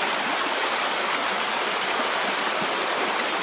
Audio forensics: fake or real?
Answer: real